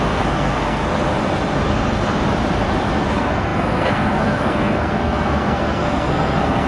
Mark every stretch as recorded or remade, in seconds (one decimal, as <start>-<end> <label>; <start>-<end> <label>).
0.0-0.8 remade; 0.8-3.1 recorded; 3.1-6.7 remade